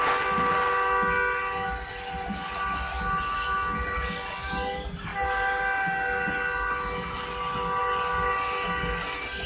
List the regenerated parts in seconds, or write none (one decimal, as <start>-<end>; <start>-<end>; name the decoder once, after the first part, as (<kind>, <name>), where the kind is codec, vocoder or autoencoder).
none